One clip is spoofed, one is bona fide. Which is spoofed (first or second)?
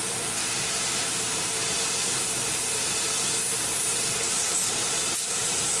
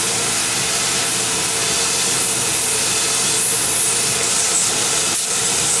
first